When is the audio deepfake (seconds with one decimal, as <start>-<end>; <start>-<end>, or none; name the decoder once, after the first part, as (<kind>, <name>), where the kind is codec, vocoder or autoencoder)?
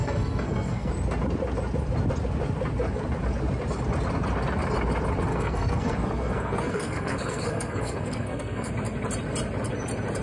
0.0-0.9 (codec, SNAC); 5.3-8.7